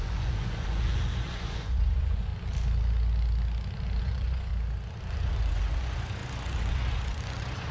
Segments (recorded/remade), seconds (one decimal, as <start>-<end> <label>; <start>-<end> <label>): 0.0-2.3 remade; 2.3-4.0 recorded; 4.0-4.5 remade; 4.5-5.1 recorded; 5.1-7.7 remade